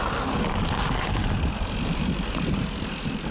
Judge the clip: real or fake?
real